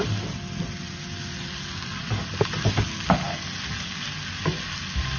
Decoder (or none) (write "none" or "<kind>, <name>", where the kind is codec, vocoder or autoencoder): none